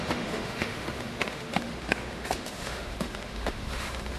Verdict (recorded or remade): remade